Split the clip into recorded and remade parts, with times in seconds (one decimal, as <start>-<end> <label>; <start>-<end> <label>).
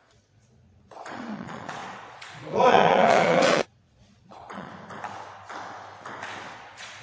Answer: 0.0-4.7 remade; 4.7-6.5 recorded; 6.5-7.0 remade